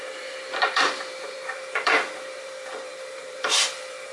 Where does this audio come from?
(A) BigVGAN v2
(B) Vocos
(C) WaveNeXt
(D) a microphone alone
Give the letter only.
A